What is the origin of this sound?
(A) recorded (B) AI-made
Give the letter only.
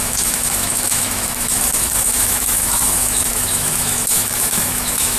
B